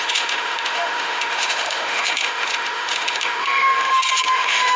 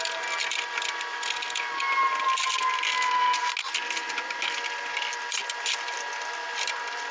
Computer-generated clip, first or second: first